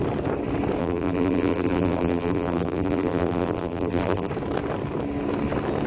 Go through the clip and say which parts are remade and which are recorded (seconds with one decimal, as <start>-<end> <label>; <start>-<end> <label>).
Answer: 0.0-0.8 recorded; 0.8-4.3 remade; 4.3-5.9 recorded